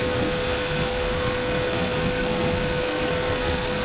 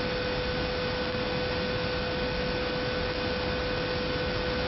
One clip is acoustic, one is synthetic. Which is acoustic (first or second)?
second